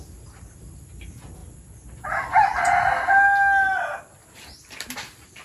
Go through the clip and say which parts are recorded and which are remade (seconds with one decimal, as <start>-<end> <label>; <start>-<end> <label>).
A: 0.0-5.4 recorded